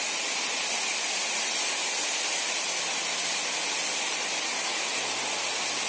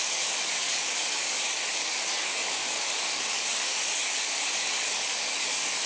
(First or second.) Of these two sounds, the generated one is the second